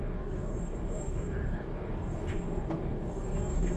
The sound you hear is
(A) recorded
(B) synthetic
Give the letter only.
B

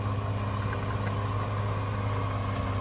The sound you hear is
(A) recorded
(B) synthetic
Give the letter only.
A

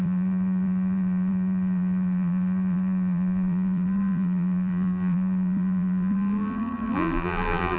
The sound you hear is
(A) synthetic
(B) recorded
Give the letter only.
A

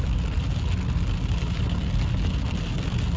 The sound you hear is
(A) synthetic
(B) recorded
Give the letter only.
B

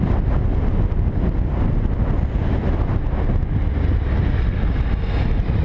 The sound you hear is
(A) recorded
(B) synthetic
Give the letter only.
A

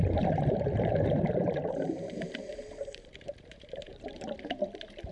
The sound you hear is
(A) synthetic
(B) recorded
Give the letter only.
A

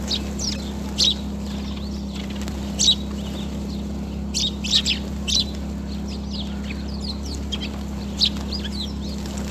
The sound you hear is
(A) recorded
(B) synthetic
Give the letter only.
A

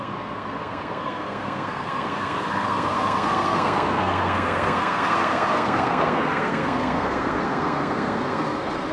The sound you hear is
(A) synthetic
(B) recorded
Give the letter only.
A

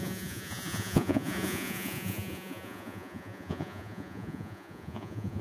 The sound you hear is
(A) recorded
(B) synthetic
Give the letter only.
B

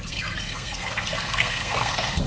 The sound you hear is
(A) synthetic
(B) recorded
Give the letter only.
A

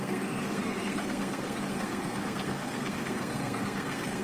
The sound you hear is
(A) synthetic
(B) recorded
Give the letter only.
A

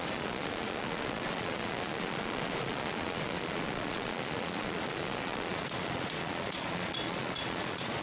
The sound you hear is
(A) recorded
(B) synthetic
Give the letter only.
B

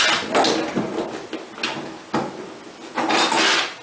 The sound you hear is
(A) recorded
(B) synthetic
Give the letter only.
A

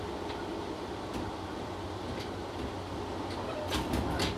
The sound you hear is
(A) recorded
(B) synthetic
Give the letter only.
A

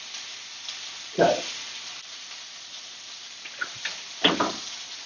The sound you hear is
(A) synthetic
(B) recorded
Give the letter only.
B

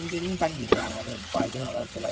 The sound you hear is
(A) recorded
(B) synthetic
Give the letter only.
B